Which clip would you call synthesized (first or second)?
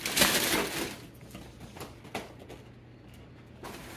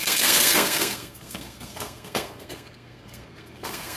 second